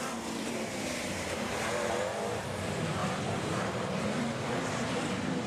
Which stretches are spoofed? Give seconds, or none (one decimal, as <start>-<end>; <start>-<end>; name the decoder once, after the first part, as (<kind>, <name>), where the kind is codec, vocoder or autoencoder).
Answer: 0.0-5.5 (vocoder, BigVGAN v2)